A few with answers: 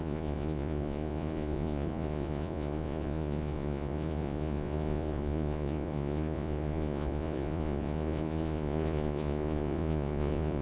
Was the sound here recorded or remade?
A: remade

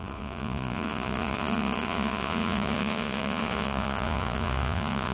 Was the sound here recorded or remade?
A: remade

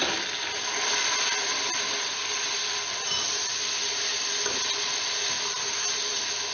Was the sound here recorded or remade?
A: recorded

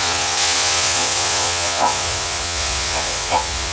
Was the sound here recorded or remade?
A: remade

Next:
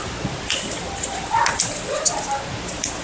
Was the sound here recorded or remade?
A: recorded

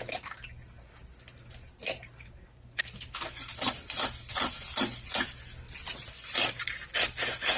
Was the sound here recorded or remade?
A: recorded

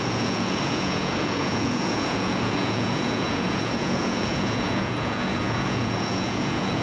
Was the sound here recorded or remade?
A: remade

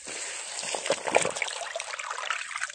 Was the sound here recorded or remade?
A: recorded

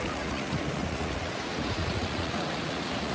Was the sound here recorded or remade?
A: remade